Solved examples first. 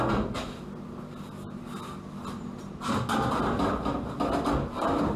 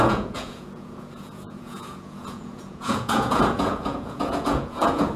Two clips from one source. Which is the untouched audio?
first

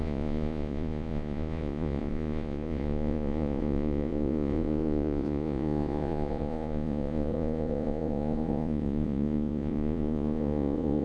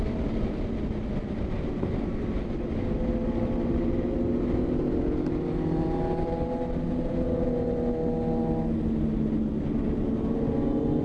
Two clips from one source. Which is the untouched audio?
second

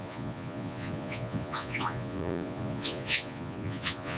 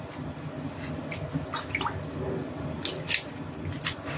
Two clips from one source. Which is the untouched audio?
second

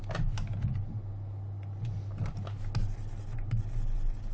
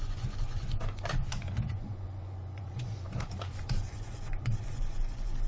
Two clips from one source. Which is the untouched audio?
first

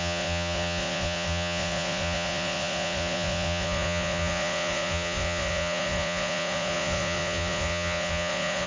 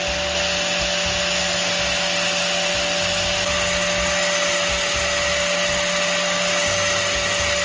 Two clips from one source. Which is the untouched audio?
second